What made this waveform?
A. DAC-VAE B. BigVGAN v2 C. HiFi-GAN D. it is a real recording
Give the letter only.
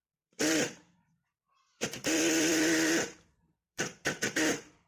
B